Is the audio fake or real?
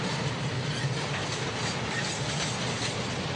real